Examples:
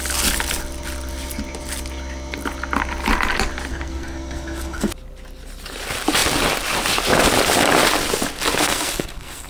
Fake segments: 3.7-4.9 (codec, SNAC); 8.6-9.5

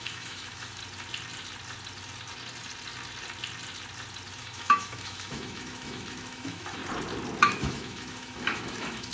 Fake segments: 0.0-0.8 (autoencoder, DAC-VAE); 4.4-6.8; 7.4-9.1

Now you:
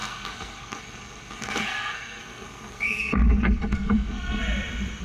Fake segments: 0.0-4.4 (codec, SNAC)